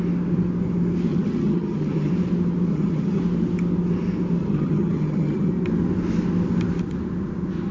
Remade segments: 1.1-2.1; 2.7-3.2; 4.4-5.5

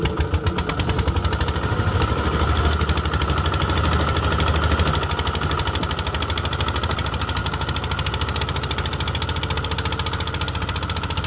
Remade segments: none

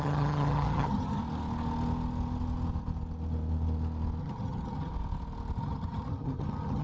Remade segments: 0.0-1.2; 4.2-4.9; 5.6-6.8

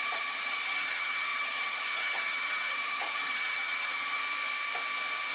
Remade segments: 0.0-4.2

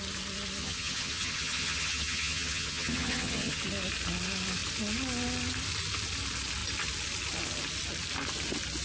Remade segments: 0.6-3.6